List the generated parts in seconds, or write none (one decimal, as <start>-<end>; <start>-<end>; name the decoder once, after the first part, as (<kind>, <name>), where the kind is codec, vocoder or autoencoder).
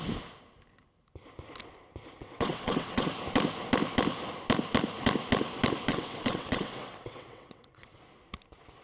2.2-3.1 (vocoder, WaveNeXt); 5.9-8.0